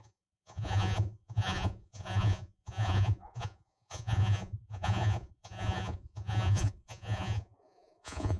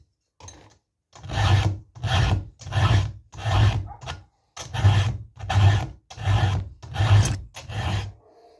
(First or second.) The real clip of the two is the second